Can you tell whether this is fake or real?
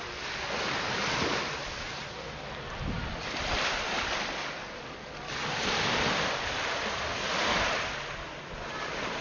real